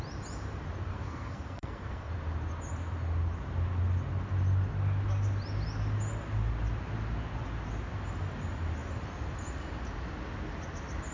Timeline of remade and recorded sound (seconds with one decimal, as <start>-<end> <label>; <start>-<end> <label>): 0.0-0.9 recorded; 0.9-2.1 remade; 2.1-11.1 recorded